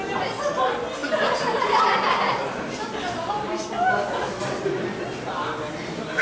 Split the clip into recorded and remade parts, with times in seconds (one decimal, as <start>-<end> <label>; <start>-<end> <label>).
0.0-6.2 recorded